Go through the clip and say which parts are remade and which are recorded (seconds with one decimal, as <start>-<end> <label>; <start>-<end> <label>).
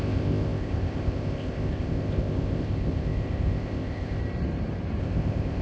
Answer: 0.0-4.2 remade; 4.2-5.0 recorded; 5.0-5.6 remade